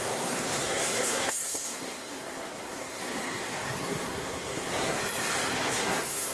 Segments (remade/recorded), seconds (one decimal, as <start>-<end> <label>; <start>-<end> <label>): 0.0-5.0 remade; 5.0-5.8 recorded; 5.8-6.3 remade